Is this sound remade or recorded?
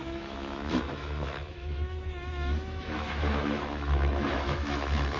remade